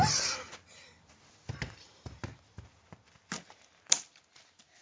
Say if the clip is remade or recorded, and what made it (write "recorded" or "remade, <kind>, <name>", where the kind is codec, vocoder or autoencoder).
recorded